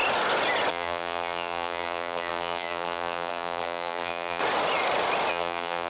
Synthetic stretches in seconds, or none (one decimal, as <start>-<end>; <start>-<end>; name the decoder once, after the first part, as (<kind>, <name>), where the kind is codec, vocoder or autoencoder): 0.7-4.4 (vocoder, BigVGAN v2); 5.3-5.9